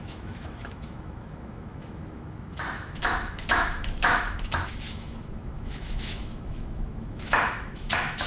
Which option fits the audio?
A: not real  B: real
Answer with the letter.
A